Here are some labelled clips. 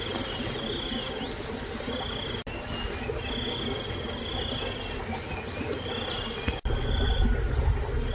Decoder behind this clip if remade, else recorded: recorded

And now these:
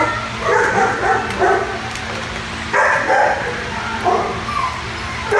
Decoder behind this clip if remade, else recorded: recorded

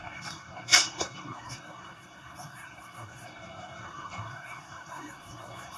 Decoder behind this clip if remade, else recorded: remade, codec, SNAC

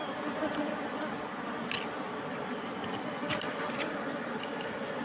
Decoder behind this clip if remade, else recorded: recorded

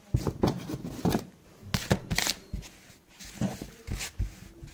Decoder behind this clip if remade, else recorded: recorded